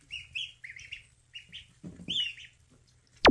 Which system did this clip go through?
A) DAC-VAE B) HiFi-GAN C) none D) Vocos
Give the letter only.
C